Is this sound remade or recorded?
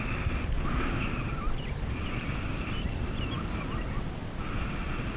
recorded